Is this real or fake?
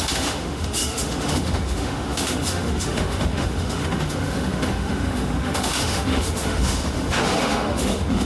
fake